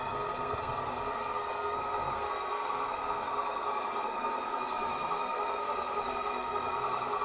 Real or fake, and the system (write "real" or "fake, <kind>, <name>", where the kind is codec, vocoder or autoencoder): fake, codec, SNAC